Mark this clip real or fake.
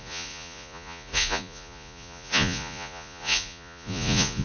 fake